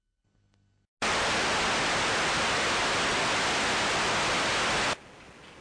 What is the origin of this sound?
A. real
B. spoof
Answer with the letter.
A